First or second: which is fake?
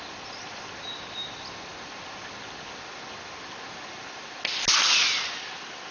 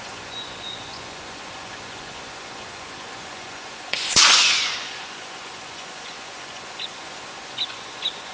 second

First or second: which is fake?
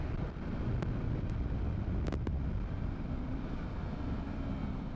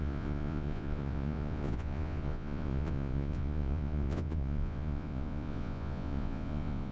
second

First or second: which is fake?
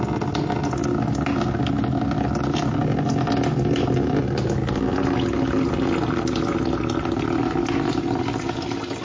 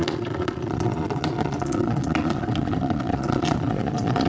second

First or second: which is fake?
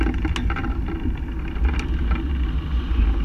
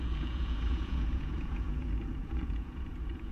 second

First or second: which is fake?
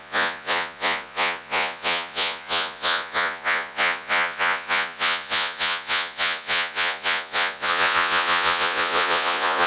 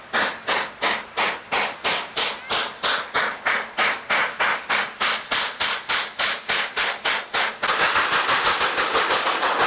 first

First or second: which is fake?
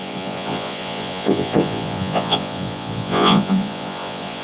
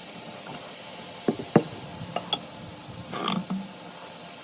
first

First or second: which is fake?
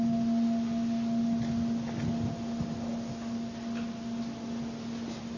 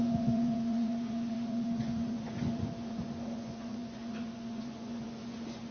second